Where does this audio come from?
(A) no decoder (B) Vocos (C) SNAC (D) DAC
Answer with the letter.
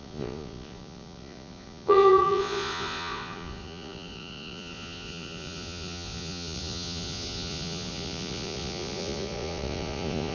B